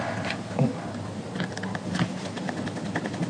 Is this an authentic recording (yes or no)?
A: yes